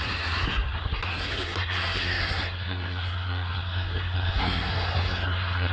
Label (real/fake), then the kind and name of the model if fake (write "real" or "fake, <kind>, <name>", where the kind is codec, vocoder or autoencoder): fake, codec, SNAC